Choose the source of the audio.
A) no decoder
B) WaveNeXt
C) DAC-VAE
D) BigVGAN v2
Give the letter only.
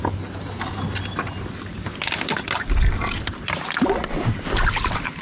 A